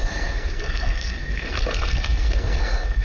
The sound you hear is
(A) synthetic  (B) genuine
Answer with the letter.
A